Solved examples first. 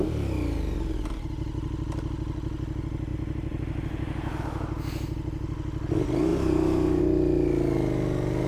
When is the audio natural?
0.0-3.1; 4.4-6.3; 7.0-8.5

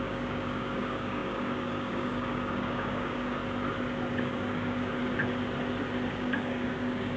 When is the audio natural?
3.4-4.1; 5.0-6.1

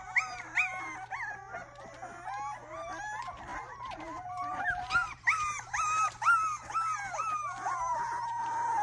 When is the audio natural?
0.0-3.5; 6.3-8.8

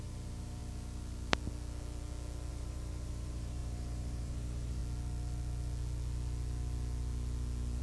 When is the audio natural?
0.6-2.5; 4.8-7.8

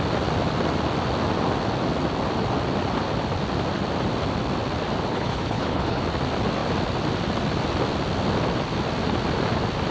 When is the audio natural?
0.0-5.1; 6.0-9.9